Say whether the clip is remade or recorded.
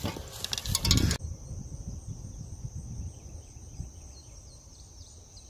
recorded